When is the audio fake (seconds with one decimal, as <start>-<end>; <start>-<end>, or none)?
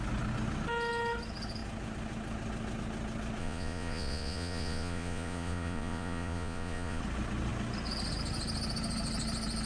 3.4-7.0